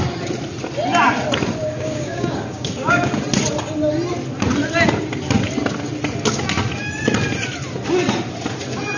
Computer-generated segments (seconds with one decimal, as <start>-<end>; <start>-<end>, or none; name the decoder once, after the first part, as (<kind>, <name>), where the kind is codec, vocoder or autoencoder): 1.6-3.1 (codec, DAC)

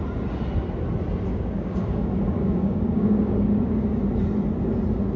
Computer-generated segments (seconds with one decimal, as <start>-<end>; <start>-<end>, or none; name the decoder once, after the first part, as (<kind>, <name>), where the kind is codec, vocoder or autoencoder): 1.3-4.0 (codec, DAC)

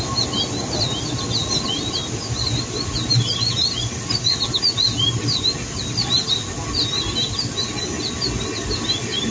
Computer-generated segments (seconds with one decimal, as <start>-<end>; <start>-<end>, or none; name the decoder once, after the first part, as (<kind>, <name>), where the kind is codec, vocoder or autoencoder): none

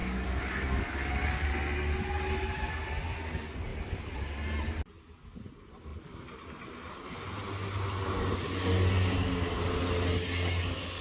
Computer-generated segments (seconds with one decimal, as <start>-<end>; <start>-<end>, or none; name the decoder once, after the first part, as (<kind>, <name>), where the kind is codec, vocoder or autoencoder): 0.0-1.5 (codec, DAC)

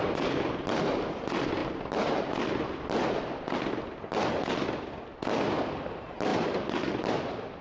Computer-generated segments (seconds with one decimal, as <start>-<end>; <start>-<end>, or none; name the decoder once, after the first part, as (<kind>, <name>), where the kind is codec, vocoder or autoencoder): none

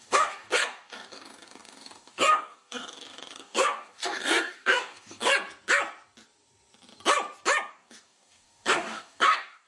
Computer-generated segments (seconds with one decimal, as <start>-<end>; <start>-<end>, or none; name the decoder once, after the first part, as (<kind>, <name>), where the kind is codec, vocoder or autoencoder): 0.0-5.3 (codec, DAC); 7.7-9.7

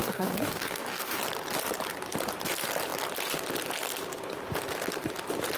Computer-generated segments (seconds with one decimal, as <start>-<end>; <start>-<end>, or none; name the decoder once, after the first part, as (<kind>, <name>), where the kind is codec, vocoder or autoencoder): 0.0-1.2 (codec, DAC)